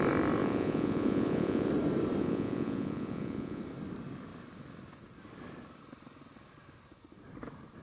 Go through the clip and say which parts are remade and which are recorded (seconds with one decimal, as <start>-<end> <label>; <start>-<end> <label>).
0.0-0.4 recorded; 0.4-1.7 remade; 1.7-2.2 recorded; 2.2-3.6 remade; 3.6-7.8 recorded